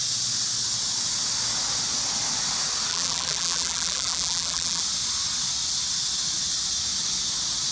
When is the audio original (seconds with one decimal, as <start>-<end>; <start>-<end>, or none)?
0.0-2.9; 4.8-7.7